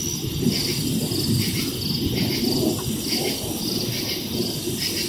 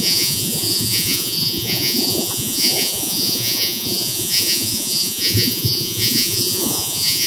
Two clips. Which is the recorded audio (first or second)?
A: first